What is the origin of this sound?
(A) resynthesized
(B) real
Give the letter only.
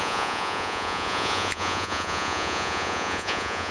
A